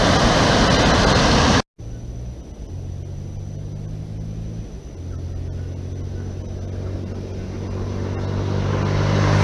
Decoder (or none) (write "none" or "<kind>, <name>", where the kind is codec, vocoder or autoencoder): none